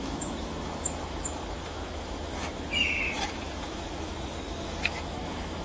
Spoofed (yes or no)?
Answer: yes